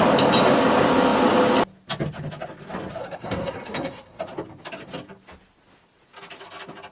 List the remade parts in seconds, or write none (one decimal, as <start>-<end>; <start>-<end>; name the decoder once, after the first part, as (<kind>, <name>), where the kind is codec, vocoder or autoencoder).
3.0-4.2 (codec, SNAC)